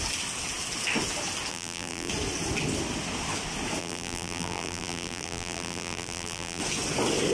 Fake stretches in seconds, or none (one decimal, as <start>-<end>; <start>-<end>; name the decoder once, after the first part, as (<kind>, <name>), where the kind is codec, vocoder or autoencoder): 1.5-2.1 (vocoder, BigVGAN v2); 3.8-6.6